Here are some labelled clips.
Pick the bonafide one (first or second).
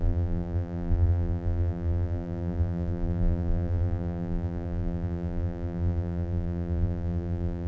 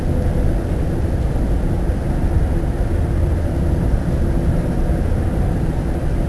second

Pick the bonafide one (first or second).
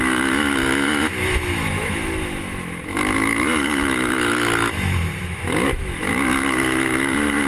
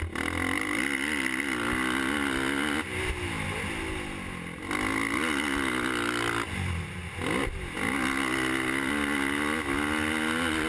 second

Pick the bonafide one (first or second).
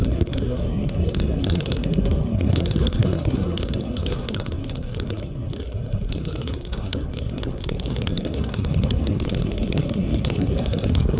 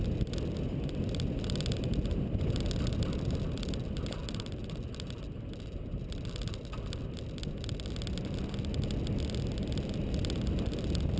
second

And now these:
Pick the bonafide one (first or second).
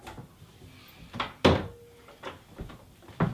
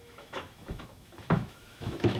first